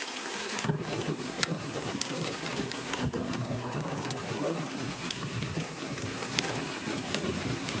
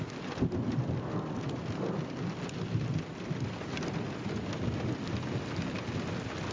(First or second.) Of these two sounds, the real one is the second